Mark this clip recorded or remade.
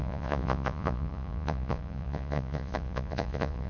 remade